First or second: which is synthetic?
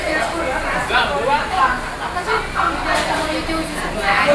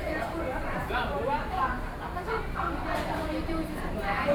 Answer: second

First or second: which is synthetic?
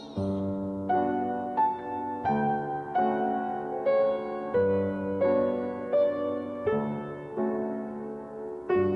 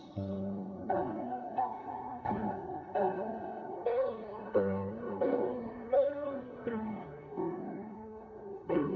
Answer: second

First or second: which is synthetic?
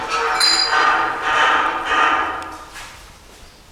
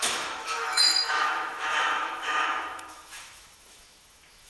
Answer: second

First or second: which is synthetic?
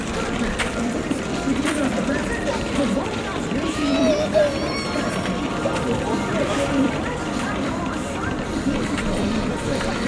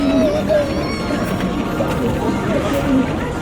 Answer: first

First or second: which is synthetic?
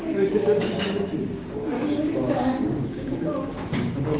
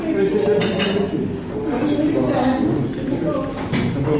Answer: first